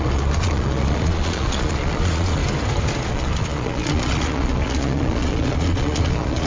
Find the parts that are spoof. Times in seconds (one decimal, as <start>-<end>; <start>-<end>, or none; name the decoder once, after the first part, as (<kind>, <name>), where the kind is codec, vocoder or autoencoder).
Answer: 0.0-2.4 (vocoder, Vocos); 3.1-6.5